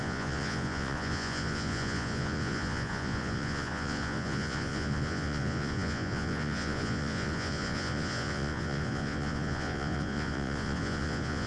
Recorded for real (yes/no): no